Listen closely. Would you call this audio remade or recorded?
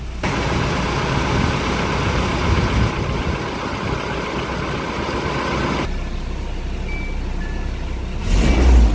recorded